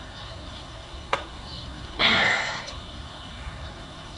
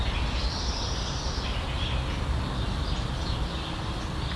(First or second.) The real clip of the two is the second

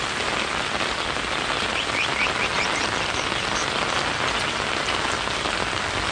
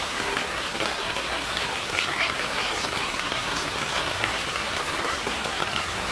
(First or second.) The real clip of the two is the first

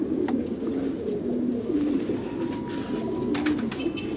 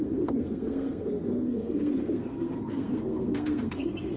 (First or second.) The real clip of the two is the first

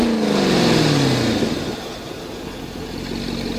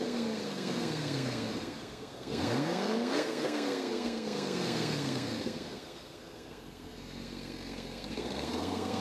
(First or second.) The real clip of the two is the first